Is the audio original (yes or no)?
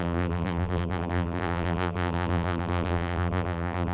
no